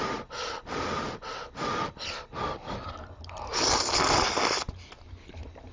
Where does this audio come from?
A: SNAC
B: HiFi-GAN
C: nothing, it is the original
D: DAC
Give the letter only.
C